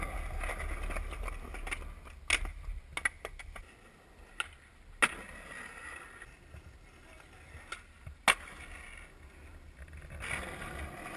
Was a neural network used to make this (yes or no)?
no